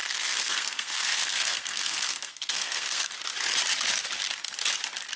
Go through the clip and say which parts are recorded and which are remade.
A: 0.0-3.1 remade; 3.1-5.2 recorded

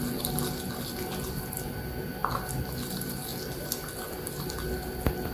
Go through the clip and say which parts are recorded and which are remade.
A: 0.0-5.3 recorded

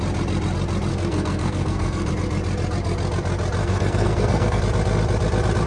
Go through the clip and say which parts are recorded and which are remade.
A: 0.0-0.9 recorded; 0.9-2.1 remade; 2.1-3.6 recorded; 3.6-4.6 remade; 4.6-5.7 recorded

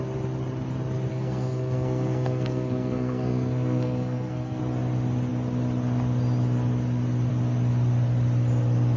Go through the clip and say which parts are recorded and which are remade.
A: 0.0-1.1 recorded; 1.1-4.6 remade; 4.6-9.0 recorded

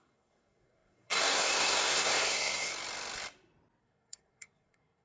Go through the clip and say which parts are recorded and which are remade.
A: 0.0-2.7 remade; 2.7-3.8 recorded; 3.8-5.0 remade